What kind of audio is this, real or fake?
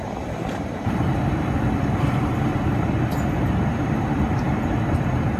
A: fake